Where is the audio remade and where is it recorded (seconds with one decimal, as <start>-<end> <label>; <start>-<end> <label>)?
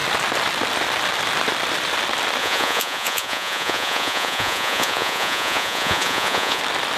0.0-2.4 recorded; 2.4-6.6 remade; 6.6-7.0 recorded